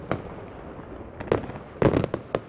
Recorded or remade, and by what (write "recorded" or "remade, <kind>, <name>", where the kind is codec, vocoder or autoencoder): recorded